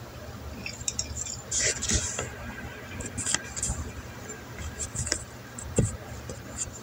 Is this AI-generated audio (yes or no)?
no